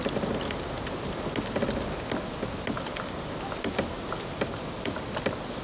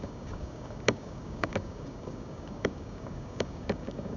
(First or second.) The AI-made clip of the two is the second